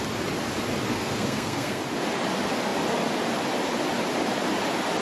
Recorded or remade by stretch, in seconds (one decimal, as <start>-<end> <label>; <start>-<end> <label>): 0.0-0.9 recorded; 0.9-1.8 remade; 1.8-5.0 recorded